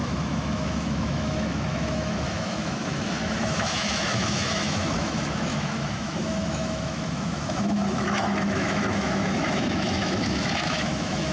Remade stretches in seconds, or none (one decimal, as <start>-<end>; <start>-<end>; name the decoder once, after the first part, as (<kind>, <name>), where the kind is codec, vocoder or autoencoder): 0.0-11.3 (autoencoder, DAC-VAE)